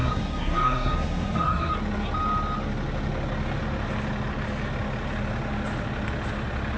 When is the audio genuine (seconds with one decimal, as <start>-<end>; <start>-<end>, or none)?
1.7-6.8